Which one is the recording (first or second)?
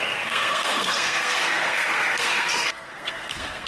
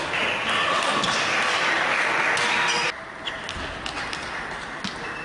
second